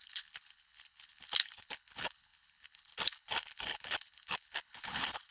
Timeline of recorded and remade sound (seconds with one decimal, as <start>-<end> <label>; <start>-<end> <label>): 0.0-5.3 remade